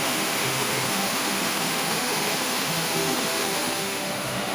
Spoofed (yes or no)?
yes